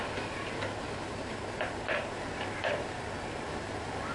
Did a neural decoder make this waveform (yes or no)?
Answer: no